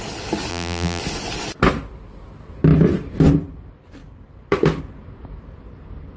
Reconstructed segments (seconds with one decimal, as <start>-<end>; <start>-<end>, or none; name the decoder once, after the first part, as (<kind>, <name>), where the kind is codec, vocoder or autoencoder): 0.5-1.0 (vocoder, BigVGAN v2)